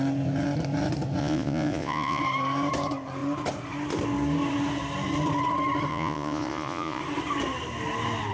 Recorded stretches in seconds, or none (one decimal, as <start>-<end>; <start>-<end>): 0.0-1.2; 2.2-5.9; 7.0-8.3